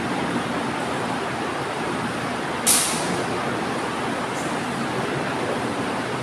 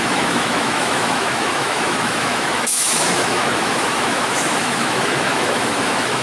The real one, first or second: first